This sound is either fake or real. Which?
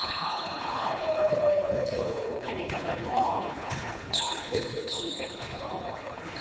fake